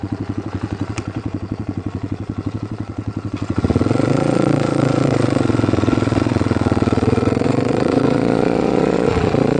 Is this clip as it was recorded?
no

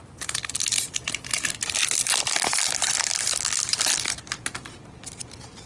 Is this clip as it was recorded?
yes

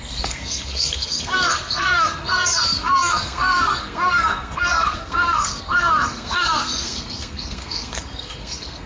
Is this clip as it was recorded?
no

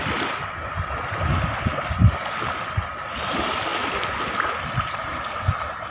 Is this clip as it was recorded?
yes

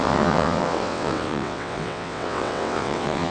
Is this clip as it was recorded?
no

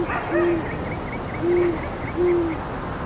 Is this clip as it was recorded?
yes